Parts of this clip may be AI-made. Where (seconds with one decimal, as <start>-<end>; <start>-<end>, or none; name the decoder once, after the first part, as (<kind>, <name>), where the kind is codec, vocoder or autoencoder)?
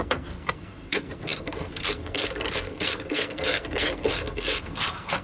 0.0-5.2 (codec, SNAC)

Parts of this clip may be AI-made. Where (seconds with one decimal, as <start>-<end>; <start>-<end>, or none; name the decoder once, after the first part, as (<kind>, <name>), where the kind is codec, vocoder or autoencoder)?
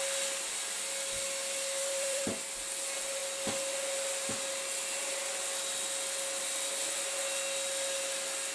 1.4-2.2 (vocoder, BigVGAN v2)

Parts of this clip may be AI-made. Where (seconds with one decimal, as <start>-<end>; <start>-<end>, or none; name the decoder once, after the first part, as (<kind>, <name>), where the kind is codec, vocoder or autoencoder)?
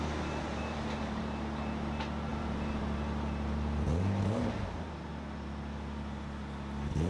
0.5-1.2 (vocoder, BigVGAN v2); 2.3-2.8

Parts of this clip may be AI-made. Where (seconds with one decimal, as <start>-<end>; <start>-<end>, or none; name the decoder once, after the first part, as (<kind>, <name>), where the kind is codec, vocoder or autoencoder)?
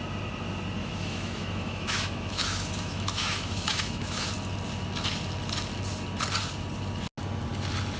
0.8-4.3 (autoencoder, DAC-VAE)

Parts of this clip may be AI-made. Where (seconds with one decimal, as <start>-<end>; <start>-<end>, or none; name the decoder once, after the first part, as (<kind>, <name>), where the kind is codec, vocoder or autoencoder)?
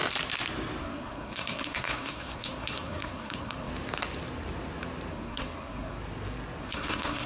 0.8-3.7 (codec, SNAC); 5.1-6.0; 6.6-7.3